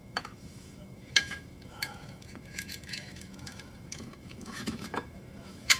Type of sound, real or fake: fake